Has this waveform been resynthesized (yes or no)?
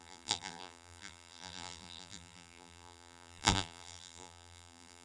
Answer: yes